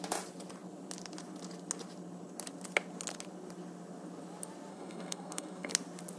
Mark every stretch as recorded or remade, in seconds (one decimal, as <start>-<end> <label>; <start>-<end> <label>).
0.0-4.7 recorded; 4.7-5.7 remade; 5.7-6.2 recorded